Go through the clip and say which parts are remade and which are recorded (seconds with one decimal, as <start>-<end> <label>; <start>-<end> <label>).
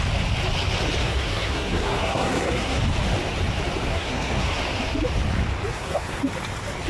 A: 0.0-1.0 recorded; 1.0-2.8 remade; 2.8-3.9 recorded; 3.9-4.6 remade; 4.6-5.7 recorded; 5.7-6.2 remade; 6.2-6.9 recorded